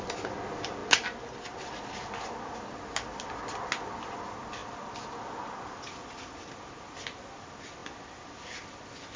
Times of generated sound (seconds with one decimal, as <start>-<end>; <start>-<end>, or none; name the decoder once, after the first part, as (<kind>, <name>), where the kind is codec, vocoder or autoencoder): none